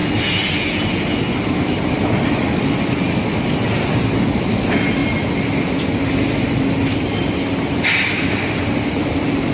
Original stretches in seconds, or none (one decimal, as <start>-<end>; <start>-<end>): 0.0-2.9; 5.0-6.1